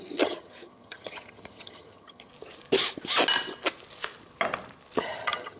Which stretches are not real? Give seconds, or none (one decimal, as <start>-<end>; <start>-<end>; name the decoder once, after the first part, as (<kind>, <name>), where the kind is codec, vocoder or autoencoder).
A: 0.0-2.3 (vocoder, HiFi-GAN); 5.0-5.6

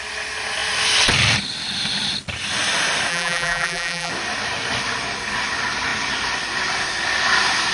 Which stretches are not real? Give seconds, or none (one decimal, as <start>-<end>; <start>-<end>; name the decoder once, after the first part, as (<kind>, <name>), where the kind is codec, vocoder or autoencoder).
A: 3.1-4.1 (vocoder, BigVGAN v2)